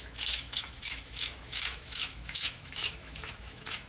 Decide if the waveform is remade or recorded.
remade